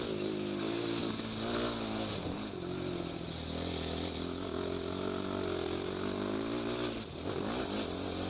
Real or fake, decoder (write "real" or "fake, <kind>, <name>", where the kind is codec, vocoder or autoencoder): real